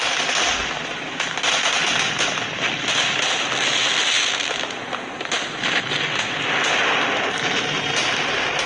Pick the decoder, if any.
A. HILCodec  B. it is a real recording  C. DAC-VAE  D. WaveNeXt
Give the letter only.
B